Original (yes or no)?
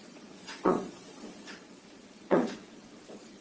no